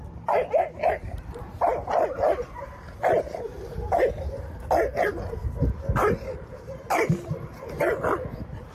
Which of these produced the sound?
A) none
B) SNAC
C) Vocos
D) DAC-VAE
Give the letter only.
A